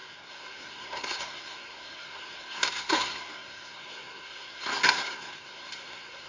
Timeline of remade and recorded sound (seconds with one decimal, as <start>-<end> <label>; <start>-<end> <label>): 0.0-6.3 remade